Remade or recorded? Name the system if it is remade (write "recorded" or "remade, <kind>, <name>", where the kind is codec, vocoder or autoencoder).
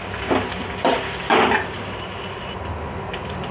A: recorded